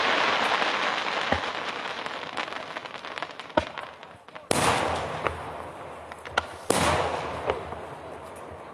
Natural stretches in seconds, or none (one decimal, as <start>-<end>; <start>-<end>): 0.0-8.7